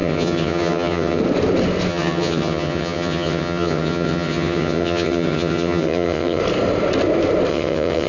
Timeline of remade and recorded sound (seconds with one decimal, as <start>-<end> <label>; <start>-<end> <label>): 0.0-1.2 remade; 1.2-1.9 recorded; 1.9-6.4 remade; 6.4-7.5 recorded; 7.5-8.1 remade